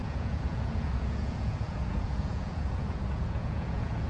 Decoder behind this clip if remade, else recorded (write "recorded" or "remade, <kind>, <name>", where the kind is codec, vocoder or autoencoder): remade, vocoder, Vocos